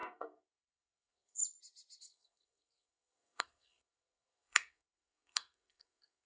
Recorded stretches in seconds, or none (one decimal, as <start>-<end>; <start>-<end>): 1.4-2.0